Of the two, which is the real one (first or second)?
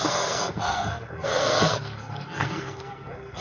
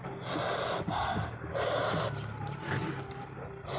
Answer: second